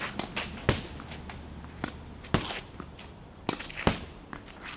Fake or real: real